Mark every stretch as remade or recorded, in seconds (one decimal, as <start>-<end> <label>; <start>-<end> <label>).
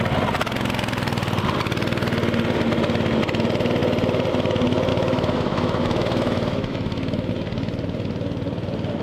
0.0-4.9 recorded; 4.9-7.3 remade; 7.3-9.0 recorded